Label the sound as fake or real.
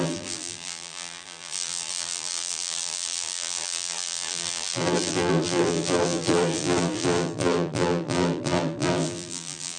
fake